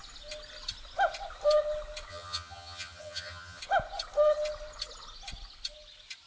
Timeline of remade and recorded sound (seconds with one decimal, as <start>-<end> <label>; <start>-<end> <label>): 0.0-2.1 recorded; 2.1-3.6 remade; 3.6-6.3 recorded